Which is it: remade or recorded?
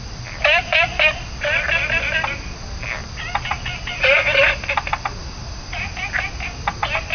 recorded